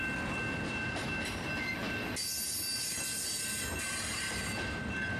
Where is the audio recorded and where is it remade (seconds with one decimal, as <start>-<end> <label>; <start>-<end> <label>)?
0.0-5.2 recorded